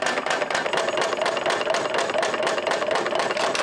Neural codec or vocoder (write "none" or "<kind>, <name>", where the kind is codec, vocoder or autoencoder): none